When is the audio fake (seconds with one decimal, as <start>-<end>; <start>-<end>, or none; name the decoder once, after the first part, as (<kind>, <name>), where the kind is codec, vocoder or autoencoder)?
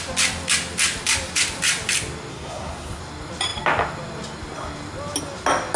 2.3-3.0 (codec, SNAC)